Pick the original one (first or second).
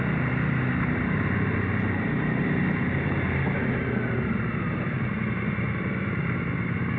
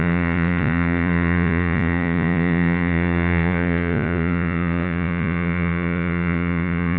first